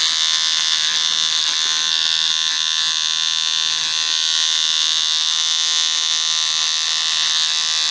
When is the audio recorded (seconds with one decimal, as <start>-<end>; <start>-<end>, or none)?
0.0-7.9